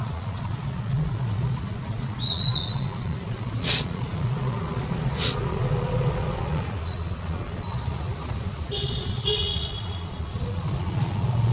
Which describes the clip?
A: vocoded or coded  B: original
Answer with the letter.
A